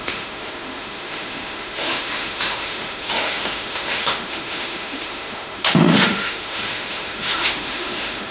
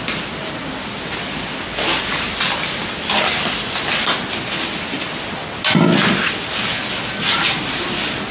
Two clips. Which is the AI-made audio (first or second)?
first